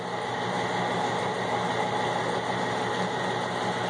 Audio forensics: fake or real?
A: real